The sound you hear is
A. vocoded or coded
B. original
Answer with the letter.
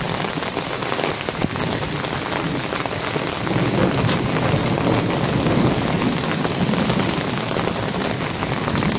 B